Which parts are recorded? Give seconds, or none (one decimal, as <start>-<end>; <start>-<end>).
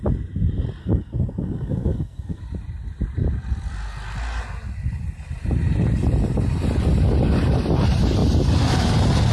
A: 0.0-0.8; 2.4-9.3